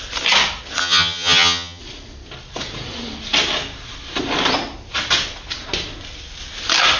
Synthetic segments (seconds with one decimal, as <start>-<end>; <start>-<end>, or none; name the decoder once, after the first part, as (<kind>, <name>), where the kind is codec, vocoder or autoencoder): 0.8-1.8 (vocoder, HiFi-GAN)